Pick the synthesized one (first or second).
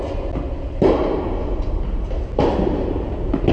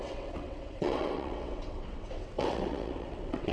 second